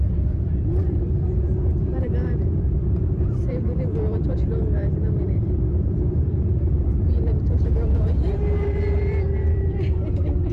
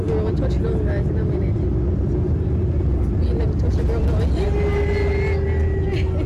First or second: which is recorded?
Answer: second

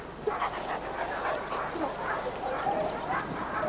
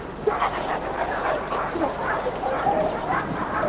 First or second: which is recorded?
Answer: first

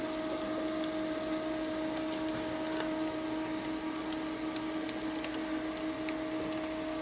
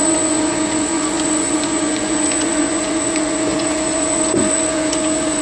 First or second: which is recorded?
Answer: first